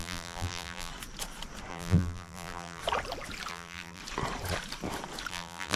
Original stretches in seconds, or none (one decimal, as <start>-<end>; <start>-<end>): 0.9-1.7; 2.8-3.5; 4.0-5.3